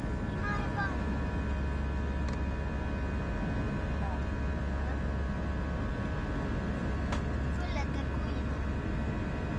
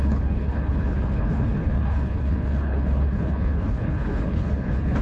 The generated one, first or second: second